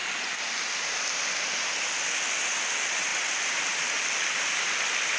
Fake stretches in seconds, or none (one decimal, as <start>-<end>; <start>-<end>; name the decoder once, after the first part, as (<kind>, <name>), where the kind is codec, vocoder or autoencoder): none